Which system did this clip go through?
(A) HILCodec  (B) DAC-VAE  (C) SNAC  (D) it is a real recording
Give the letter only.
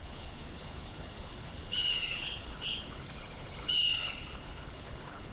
A